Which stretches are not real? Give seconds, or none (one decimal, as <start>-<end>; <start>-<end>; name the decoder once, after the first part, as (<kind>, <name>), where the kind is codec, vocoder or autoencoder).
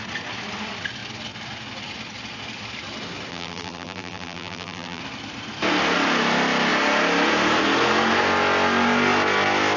3.3-5.0 (vocoder, BigVGAN v2)